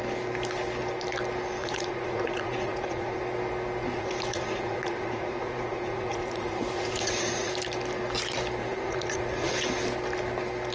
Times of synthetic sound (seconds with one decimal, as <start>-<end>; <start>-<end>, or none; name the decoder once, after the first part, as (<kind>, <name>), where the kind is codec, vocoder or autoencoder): 1.6-3.2 (vocoder, Vocos); 3.8-7.5; 8.6-9.5